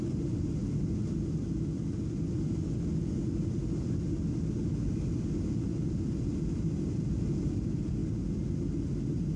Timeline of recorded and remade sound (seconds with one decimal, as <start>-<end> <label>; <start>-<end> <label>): 0.0-9.4 recorded